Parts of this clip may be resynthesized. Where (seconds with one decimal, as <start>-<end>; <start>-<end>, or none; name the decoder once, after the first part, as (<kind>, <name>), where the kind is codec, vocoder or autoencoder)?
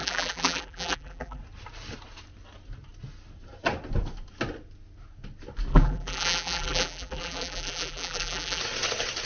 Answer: 0.0-1.4 (vocoder, BigVGAN v2); 5.7-8.6